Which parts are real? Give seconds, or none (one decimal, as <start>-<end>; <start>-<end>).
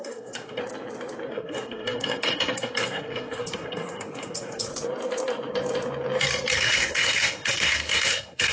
0.6-1.3; 4.7-6.6